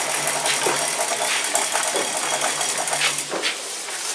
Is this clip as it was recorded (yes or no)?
yes